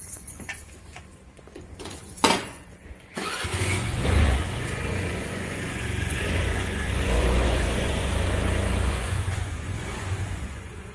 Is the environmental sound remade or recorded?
remade